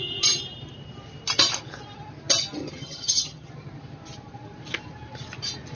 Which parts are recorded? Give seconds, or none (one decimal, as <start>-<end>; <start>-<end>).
0.0-2.6; 3.5-5.8